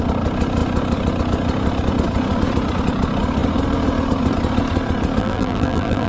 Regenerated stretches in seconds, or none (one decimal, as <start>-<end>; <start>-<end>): 5.2-6.1